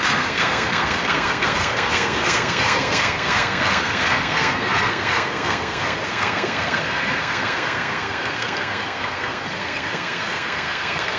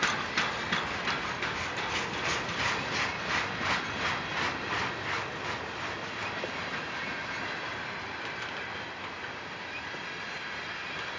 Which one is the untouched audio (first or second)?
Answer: second